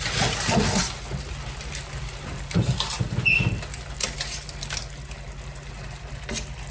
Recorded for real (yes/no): yes